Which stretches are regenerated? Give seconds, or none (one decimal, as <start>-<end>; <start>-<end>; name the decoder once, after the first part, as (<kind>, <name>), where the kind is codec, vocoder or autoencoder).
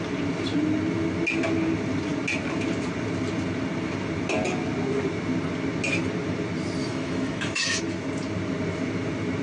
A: 6.8-7.8 (autoencoder, DAC-VAE)